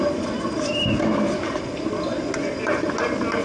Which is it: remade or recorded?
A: recorded